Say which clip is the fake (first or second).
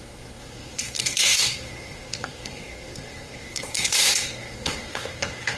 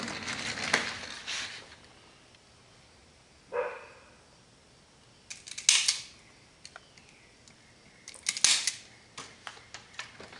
first